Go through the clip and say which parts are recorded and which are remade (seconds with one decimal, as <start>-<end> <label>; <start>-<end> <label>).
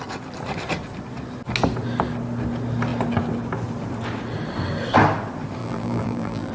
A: 0.0-5.6 recorded; 5.6-6.5 remade